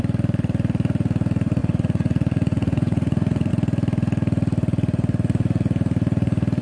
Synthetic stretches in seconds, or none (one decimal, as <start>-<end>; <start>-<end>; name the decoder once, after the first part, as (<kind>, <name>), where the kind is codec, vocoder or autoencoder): 1.6-3.5 (vocoder, Vocos)

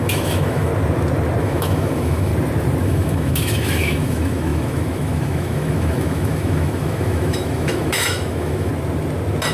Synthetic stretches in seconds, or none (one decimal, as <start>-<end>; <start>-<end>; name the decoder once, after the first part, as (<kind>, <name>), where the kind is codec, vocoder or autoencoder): 0.0-0.7 (autoencoder, DAC-VAE); 1.4-2.3; 2.8-8.7

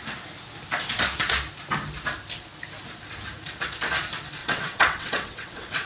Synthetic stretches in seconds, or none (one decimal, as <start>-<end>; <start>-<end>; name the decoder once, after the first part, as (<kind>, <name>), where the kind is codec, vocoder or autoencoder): 4.4-5.9 (vocoder, WaveNeXt)

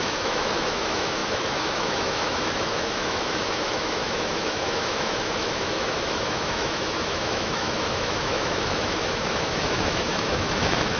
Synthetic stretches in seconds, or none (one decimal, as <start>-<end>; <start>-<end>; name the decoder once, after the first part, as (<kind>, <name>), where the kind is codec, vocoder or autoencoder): 0.0-11.0 (autoencoder, DAC-VAE)